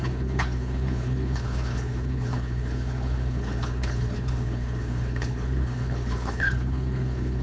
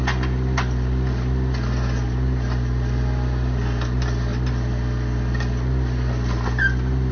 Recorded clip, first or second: second